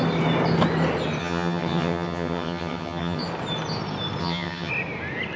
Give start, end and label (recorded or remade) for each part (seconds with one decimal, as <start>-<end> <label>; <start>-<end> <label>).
0.0-1.2 recorded; 1.2-3.2 remade; 3.2-4.2 recorded; 4.2-4.7 remade; 4.7-5.4 recorded

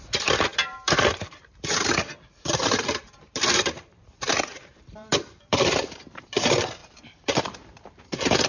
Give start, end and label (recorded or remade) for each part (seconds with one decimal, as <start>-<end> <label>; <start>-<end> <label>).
0.0-8.5 remade